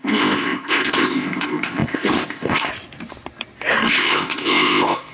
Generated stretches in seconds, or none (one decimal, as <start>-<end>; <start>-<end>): 0.0-2.7; 3.9-5.1